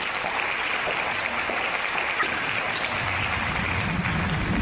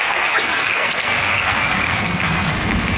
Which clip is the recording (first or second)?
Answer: first